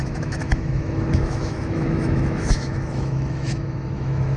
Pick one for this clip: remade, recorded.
remade